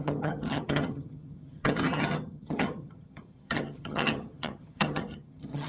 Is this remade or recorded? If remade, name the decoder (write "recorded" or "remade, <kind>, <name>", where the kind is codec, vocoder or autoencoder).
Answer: remade, vocoder, HiFi-GAN